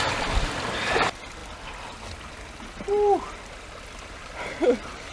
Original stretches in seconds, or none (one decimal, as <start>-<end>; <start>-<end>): 0.0-5.1